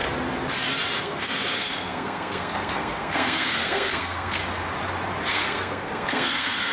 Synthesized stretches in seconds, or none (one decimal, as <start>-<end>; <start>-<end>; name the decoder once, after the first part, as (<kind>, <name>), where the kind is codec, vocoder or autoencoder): 1.0-4.4 (codec, SNAC); 5.3-6.7